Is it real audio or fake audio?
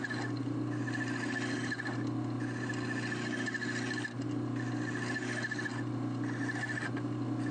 real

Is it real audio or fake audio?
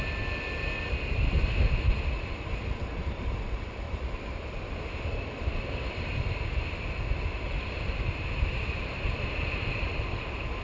real